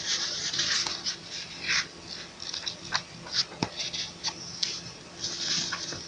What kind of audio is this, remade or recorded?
recorded